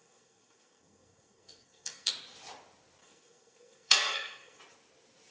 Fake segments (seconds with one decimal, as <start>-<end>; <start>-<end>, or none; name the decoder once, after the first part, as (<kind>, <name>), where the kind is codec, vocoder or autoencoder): 0.0-2.1 (codec, SNAC); 3.0-4.6